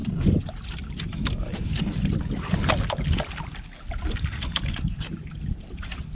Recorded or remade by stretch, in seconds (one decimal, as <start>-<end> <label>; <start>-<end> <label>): 0.0-6.1 recorded